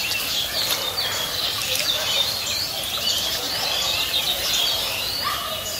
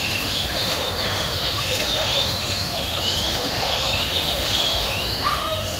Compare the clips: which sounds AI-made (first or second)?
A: second